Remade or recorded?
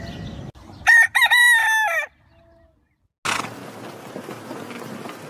recorded